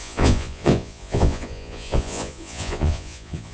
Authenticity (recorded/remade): remade